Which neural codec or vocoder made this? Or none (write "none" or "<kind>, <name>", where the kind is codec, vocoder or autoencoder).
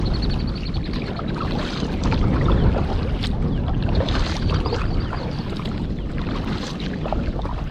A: none